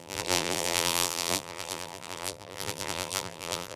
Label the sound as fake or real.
fake